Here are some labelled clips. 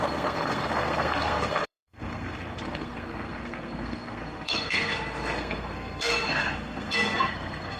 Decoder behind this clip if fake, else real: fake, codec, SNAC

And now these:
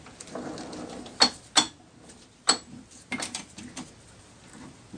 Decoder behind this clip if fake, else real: real